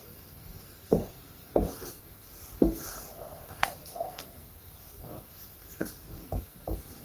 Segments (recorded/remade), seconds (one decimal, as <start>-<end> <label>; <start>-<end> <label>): 0.0-7.0 remade